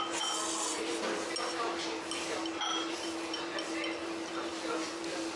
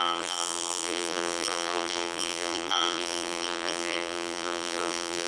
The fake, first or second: second